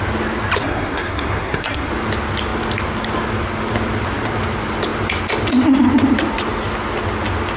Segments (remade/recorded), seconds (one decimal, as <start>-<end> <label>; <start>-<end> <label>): 0.0-0.6 recorded; 0.6-1.9 remade; 1.9-7.6 recorded